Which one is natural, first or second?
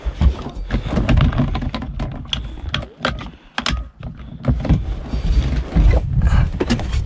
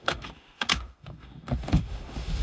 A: first